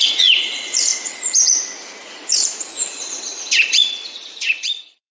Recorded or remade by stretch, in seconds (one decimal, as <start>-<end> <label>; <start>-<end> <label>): 0.0-5.1 remade